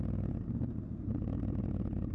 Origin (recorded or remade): recorded